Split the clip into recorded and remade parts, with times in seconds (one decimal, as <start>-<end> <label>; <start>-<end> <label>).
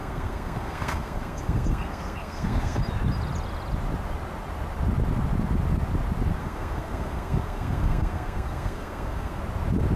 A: 0.0-2.8 remade; 2.8-6.4 recorded; 6.4-9.4 remade; 9.4-10.0 recorded